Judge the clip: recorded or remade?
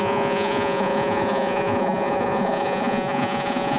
remade